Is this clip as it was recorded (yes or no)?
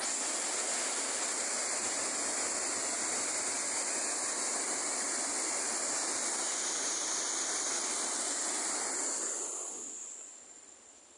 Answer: yes